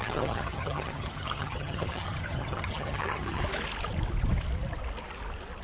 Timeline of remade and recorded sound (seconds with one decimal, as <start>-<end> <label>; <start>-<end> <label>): 0.0-3.4 remade; 3.4-5.6 recorded